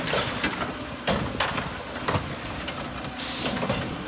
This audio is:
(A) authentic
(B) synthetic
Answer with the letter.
A